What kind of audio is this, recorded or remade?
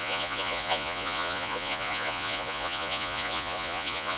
remade